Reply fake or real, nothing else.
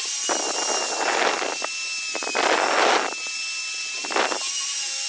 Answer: real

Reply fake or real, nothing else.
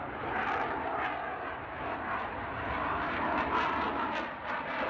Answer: real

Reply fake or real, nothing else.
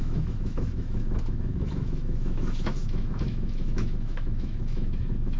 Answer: fake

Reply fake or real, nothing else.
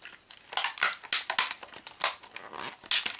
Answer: real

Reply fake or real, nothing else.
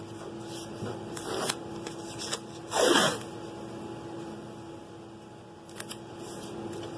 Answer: real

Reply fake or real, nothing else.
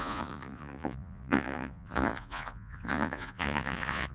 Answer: fake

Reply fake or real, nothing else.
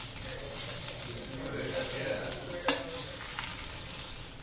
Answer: real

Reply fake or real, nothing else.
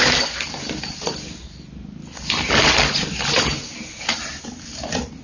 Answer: real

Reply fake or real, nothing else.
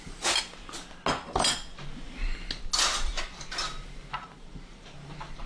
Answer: real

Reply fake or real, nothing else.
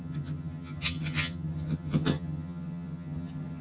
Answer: fake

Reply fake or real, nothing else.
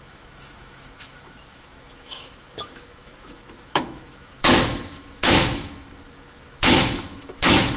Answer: fake